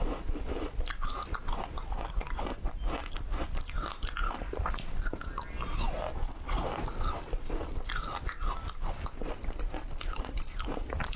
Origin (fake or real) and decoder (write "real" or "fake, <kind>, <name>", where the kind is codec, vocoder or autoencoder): real